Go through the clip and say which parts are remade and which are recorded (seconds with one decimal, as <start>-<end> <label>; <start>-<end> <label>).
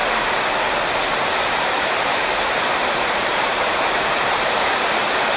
0.0-0.9 recorded; 0.9-5.4 remade